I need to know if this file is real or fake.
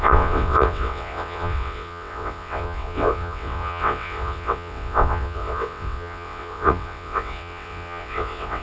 fake